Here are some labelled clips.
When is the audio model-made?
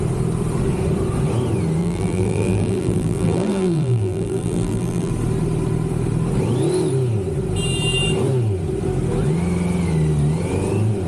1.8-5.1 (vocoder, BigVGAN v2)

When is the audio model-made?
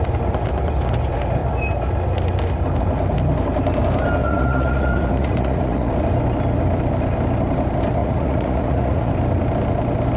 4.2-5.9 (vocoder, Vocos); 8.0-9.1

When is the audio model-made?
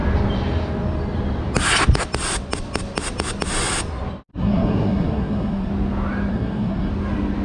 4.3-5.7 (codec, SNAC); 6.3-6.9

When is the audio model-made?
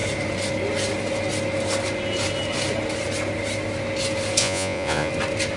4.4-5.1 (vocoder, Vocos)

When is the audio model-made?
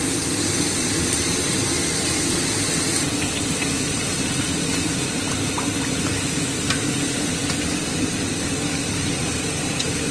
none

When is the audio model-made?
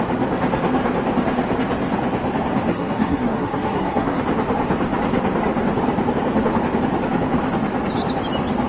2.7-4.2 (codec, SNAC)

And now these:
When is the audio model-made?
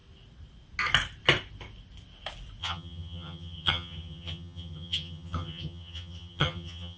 2.6-7.0 (vocoder, HiFi-GAN)